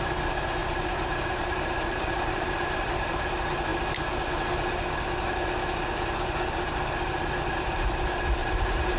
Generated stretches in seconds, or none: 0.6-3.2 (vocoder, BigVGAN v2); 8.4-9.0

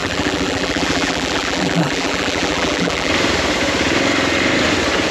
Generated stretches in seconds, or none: 0.0-3.1 (vocoder, BigVGAN v2)

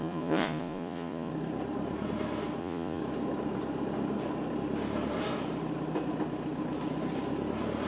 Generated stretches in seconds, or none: 0.0-1.3 (vocoder, Vocos); 2.6-3.0

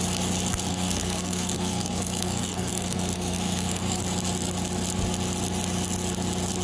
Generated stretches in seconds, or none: 0.7-4.0 (codec, SNAC)

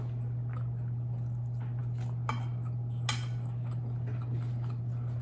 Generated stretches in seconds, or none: none